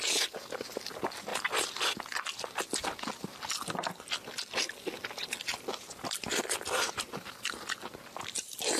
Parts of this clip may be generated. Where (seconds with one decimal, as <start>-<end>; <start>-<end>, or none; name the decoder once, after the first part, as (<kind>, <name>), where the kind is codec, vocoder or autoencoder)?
none